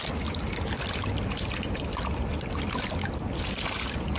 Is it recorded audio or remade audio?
recorded